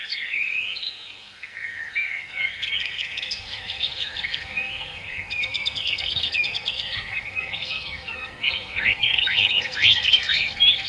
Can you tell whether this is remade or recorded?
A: remade